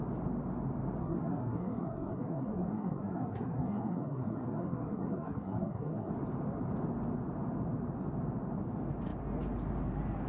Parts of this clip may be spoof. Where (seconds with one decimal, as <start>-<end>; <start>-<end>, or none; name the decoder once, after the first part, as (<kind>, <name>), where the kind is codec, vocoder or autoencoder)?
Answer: 1.0-6.1 (codec, SNAC)